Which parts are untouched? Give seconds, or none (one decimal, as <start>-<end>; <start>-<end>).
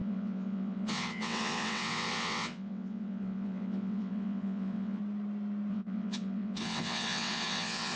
5.0-5.7